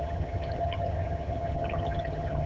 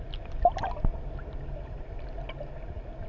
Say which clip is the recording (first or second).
second